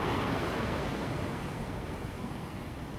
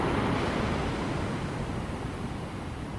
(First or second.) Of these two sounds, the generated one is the first